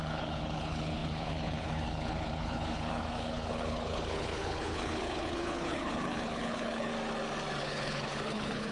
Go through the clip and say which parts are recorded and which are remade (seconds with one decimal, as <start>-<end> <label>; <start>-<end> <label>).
0.0-6.9 remade; 6.9-7.6 recorded; 7.6-8.7 remade